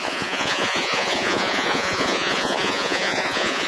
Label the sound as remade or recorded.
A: remade